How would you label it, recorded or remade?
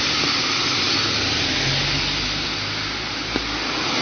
recorded